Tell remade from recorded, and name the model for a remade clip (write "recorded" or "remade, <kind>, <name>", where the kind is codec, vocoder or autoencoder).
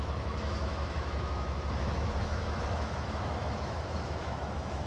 remade, autoencoder, DAC-VAE